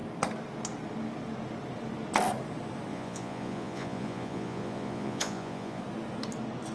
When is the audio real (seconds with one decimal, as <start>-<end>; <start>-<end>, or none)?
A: 0.0-2.9; 5.8-6.7